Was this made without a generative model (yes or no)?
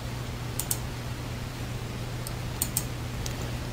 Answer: no